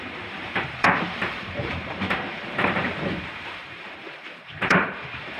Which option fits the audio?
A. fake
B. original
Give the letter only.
A